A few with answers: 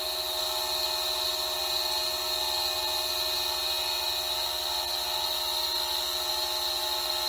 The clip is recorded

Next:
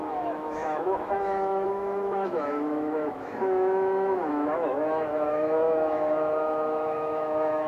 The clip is remade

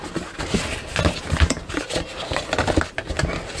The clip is recorded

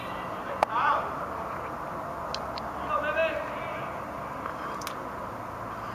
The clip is recorded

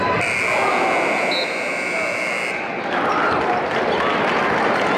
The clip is recorded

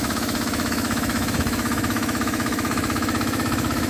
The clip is remade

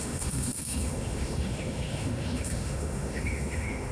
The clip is remade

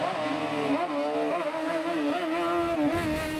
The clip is recorded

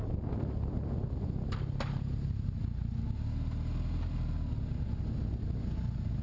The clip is recorded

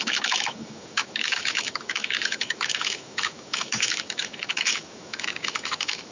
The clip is remade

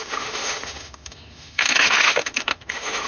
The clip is remade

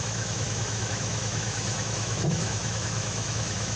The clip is remade